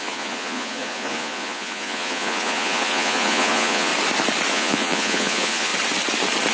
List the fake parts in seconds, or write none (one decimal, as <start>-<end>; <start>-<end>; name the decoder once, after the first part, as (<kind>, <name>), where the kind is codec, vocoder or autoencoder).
0.0-3.9 (vocoder, Vocos); 4.5-5.7